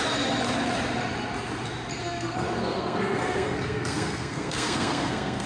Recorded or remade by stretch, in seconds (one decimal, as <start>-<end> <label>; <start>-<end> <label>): 0.0-2.0 recorded; 2.0-5.5 remade